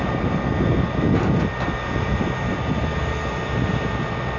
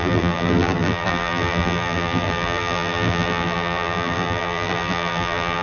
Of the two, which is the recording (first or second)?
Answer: first